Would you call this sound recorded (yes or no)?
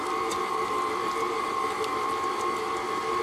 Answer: yes